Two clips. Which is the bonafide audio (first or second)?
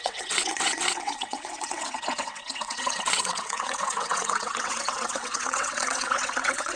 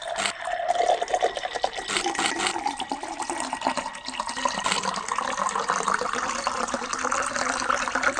second